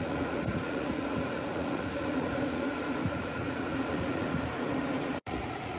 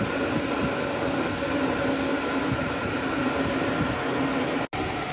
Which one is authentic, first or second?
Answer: second